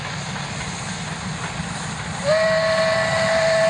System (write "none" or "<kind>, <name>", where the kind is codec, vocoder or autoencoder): none